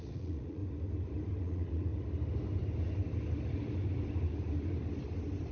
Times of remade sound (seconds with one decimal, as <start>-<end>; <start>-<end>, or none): 0.0-0.6; 1.4-1.9